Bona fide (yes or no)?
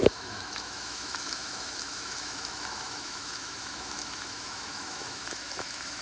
no